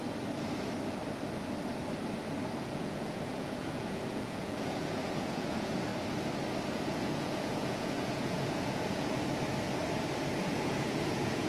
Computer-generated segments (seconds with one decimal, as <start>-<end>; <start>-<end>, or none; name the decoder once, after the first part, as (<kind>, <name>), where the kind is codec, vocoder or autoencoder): 2.6-5.9 (vocoder, Vocos); 6.7-9.2; 10.5-11.5